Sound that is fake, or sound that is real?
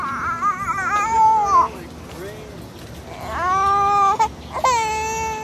real